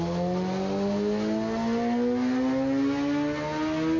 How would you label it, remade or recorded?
recorded